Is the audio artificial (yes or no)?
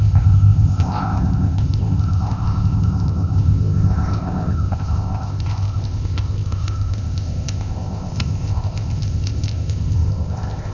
yes